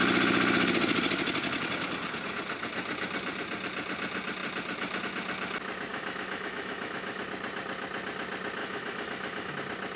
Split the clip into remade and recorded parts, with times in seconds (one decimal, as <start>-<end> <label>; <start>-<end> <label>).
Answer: 0.0-5.9 recorded; 5.9-7.2 remade; 7.2-8.6 recorded; 8.6-9.5 remade; 9.5-10.0 recorded